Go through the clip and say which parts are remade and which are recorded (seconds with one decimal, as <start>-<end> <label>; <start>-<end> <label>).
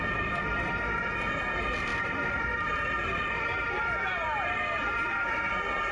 0.0-0.6 remade; 0.6-1.9 recorded; 1.9-5.4 remade; 5.4-5.9 recorded